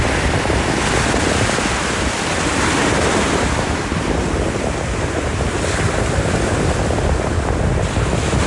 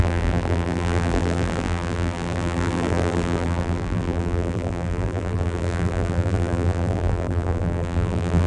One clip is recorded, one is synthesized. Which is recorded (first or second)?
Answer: first